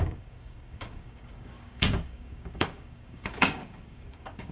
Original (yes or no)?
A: no